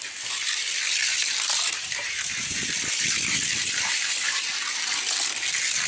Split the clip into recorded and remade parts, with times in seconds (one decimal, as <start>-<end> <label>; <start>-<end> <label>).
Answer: 0.0-1.1 recorded; 1.1-4.6 remade; 4.6-5.9 recorded